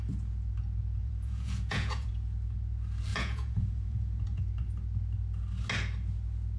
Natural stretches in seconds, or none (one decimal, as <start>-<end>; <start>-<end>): 0.0-1.0; 2.1-3.1; 4.4-6.6